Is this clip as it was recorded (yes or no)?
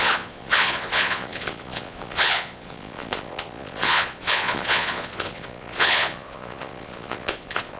no